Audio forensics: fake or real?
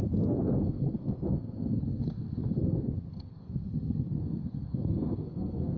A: fake